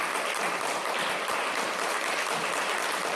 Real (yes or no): yes